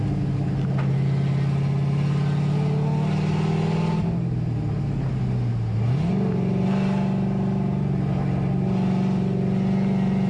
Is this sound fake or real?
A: real